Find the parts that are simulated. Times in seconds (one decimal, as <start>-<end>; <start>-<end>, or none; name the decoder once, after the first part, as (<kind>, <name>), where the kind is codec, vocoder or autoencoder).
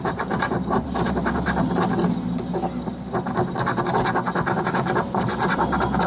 0.0-2.0 (vocoder, BigVGAN v2); 4.6-5.3